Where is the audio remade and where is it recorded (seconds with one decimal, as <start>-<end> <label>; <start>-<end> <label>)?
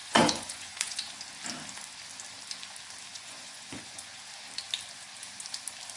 0.0-1.1 remade; 1.1-3.1 recorded; 3.1-4.2 remade; 4.2-6.0 recorded